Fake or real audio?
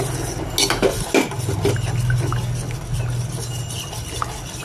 real